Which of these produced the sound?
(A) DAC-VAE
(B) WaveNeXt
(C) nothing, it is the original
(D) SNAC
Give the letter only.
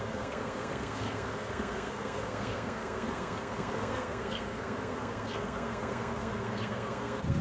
D